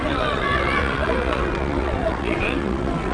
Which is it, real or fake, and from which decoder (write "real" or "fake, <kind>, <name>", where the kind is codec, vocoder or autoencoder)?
fake, vocoder, WaveNeXt